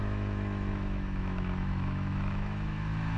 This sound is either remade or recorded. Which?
remade